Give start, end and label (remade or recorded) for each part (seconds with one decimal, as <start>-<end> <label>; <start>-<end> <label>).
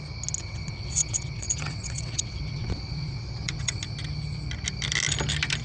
0.0-0.4 recorded; 0.4-3.8 remade; 3.8-5.6 recorded